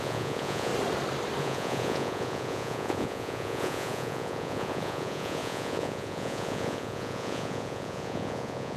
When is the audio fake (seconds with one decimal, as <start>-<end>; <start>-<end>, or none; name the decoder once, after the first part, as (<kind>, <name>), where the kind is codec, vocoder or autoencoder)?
0.0-0.7 (vocoder, Vocos); 1.4-8.8

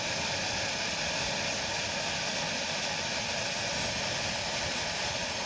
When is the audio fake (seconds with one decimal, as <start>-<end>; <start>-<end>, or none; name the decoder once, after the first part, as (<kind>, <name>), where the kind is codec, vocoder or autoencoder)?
4.7-5.5 (vocoder, Vocos)

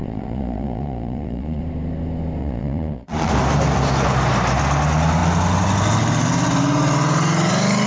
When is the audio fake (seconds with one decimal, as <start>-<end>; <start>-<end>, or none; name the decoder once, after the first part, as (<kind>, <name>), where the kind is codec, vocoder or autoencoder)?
0.0-1.6 (vocoder, Vocos); 2.4-3.3

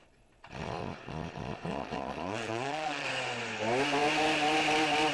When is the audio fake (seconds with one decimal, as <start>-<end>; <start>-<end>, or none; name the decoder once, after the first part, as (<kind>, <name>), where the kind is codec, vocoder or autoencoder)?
0.0-3.1 (vocoder, Vocos)

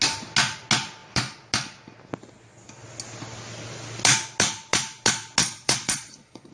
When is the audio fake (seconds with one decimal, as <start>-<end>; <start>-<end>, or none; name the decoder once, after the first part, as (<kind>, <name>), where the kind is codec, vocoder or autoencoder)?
5.4-6.5 (vocoder, Vocos)

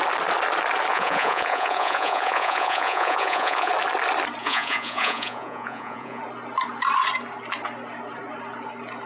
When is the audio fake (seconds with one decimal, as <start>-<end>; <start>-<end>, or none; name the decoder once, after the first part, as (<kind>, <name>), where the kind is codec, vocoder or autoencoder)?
0.9-3.7 (vocoder, Vocos); 4.4-6.2